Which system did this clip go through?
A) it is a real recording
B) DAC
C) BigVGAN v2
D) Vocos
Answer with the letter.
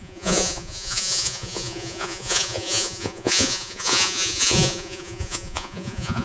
D